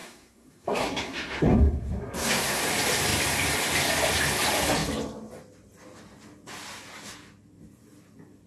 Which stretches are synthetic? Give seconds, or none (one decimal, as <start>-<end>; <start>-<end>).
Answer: 0.0-2.6